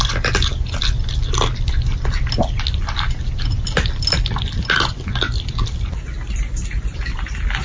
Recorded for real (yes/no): yes